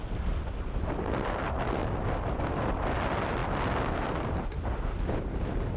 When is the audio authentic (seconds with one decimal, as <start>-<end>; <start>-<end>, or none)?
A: 1.8-2.5; 3.4-4.1